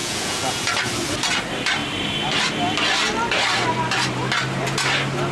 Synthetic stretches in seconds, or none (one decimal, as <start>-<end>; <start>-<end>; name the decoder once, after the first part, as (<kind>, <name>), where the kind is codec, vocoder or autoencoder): 0.0-0.6 (vocoder, Vocos)